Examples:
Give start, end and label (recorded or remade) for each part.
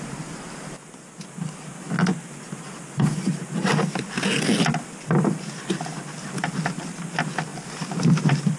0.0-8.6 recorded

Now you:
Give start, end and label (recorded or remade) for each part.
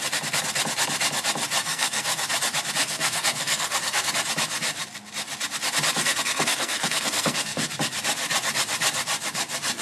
0.0-1.6 recorded; 1.6-2.2 remade; 2.2-2.8 recorded; 2.8-4.1 remade; 4.1-6.0 recorded; 6.0-7.7 remade; 7.7-9.8 recorded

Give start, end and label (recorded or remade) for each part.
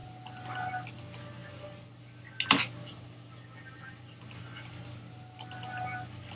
0.0-6.3 recorded